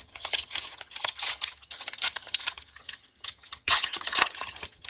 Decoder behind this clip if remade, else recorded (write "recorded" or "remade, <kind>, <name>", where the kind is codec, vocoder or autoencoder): remade, vocoder, HiFi-GAN